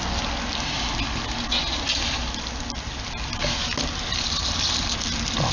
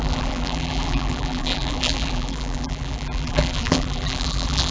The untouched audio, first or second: first